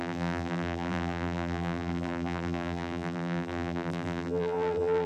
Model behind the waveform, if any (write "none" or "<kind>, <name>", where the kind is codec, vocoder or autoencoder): vocoder, BigVGAN v2